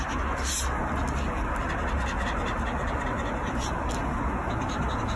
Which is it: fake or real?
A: real